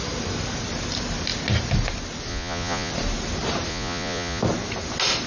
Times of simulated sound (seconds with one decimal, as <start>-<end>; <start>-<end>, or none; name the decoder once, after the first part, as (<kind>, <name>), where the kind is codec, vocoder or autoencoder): 2.3-2.9 (vocoder, Vocos); 3.7-4.4